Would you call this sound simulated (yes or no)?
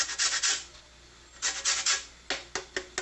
no